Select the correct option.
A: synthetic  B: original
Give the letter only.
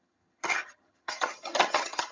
A